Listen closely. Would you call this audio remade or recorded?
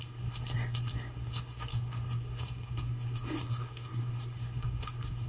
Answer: remade